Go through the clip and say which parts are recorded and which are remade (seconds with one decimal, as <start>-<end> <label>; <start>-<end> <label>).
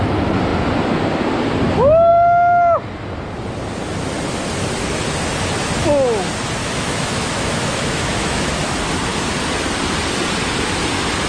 0.0-6.6 recorded; 6.6-8.5 remade; 8.5-11.3 recorded